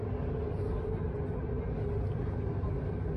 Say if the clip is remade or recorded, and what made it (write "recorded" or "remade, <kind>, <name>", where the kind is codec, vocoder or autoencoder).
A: recorded